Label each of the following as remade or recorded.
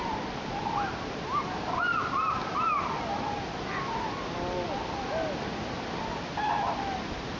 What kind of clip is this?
recorded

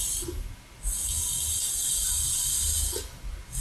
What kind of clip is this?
recorded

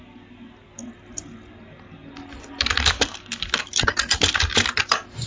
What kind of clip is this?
remade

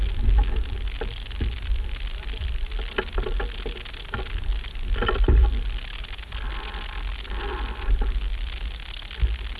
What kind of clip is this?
recorded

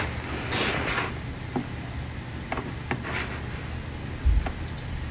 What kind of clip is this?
recorded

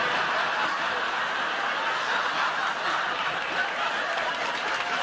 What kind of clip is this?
recorded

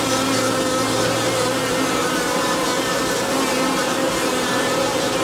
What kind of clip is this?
recorded